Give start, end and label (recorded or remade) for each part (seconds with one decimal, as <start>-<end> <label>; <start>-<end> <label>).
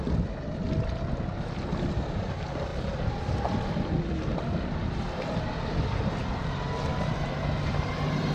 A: 0.0-2.7 recorded; 2.7-5.4 remade; 5.4-8.3 recorded